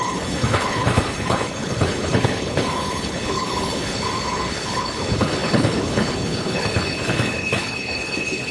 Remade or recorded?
remade